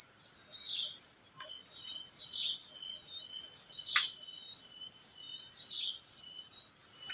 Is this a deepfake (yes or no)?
no